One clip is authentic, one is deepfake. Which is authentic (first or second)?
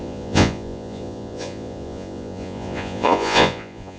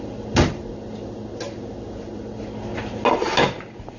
second